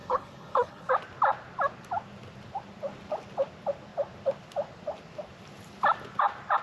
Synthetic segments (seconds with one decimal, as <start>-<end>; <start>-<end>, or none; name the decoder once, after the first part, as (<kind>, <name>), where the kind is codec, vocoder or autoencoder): 0.0-0.9 (codec, HILCodec)